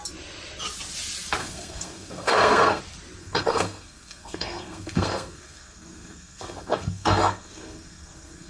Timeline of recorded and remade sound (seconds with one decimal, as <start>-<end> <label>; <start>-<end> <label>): 0.0-1.4 recorded; 1.4-2.8 remade; 2.8-3.2 recorded; 3.2-8.5 remade